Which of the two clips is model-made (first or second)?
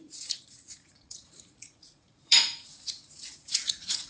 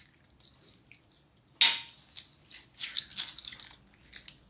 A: first